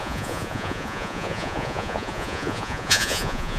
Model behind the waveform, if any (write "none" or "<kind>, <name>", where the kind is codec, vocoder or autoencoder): vocoder, Vocos